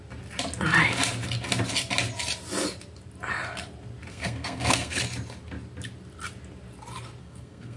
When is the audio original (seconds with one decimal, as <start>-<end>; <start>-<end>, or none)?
0.0-4.1; 5.0-7.2